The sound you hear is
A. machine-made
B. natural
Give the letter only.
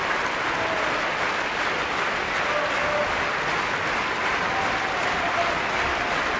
B